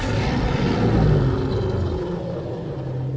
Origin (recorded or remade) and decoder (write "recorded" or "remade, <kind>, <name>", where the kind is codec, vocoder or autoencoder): recorded